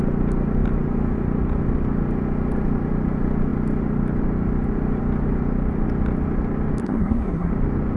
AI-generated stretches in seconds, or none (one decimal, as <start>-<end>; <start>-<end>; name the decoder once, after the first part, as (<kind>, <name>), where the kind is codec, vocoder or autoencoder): 6.8-7.5 (codec, SNAC)